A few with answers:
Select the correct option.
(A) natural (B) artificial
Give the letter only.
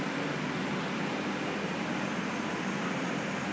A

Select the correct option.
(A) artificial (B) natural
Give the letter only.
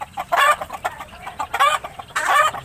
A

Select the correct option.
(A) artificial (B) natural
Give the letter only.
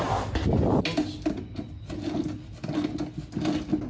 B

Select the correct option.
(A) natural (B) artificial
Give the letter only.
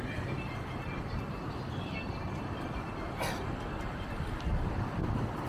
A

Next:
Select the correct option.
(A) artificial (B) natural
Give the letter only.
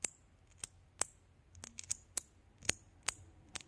B